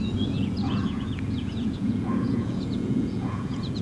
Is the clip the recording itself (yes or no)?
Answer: no